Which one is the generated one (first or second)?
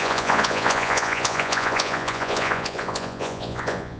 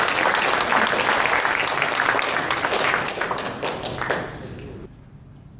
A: first